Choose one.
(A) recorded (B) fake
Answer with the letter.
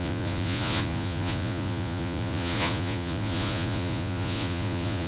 B